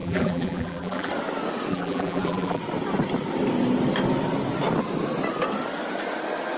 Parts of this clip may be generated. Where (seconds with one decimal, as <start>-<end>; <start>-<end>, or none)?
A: 0.0-1.1; 1.7-2.6